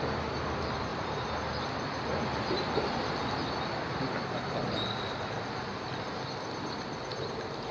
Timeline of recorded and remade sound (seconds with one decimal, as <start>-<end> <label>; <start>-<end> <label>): 0.0-7.7 recorded